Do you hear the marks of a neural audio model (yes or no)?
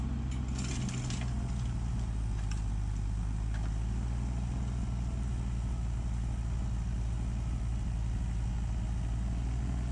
no